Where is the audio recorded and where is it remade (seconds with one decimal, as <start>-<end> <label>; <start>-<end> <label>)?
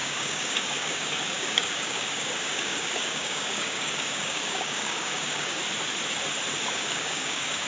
0.0-5.6 remade; 5.6-6.7 recorded; 6.7-7.7 remade